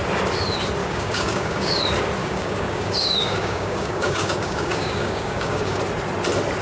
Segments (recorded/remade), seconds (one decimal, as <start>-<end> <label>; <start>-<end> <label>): 0.0-0.8 recorded; 0.8-1.8 remade; 1.8-2.2 recorded; 2.2-5.8 remade; 5.8-6.6 recorded